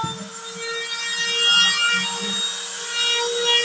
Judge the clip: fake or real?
real